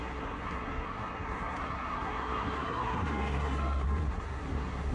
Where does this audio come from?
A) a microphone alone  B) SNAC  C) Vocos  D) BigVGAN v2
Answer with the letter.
B